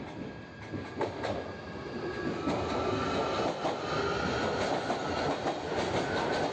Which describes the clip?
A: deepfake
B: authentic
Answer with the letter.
B